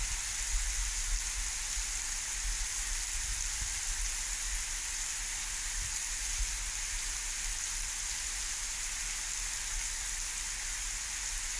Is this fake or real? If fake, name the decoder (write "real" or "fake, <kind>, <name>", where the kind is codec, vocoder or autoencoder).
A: real